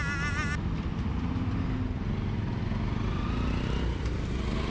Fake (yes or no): no